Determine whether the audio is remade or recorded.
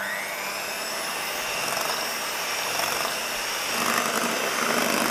recorded